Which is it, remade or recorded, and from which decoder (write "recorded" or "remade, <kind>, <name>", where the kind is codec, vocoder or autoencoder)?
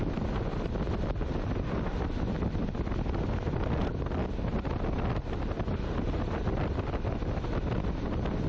recorded